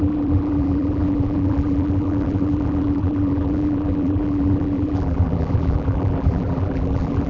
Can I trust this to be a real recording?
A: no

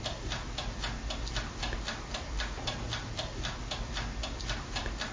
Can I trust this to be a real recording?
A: no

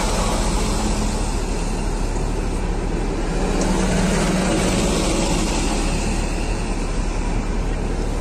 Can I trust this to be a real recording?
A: yes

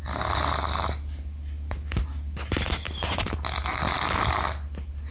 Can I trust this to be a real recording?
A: yes